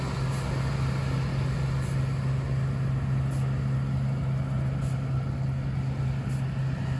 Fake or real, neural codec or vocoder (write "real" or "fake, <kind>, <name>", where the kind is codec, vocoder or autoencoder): real